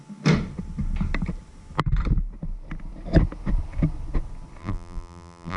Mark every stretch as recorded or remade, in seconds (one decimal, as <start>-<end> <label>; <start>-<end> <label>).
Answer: 0.0-4.6 recorded; 4.6-5.6 remade